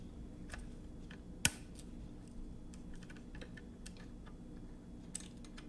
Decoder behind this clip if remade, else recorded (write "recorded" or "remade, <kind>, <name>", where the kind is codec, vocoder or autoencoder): recorded